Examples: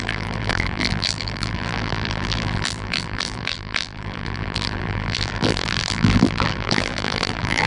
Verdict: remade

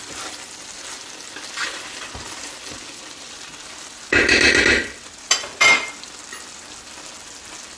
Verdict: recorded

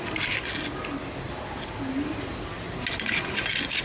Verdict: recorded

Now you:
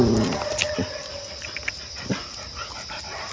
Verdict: recorded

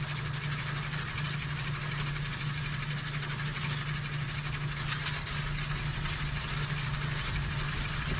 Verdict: recorded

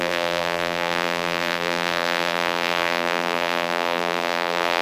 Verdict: remade